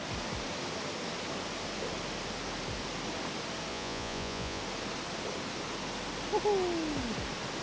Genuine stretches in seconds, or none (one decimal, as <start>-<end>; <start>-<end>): 0.0-3.7; 4.6-7.6